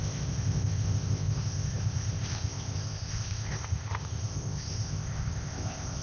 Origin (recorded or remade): remade